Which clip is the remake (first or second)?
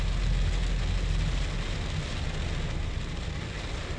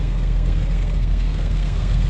second